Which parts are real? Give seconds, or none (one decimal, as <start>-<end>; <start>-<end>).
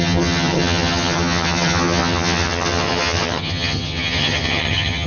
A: none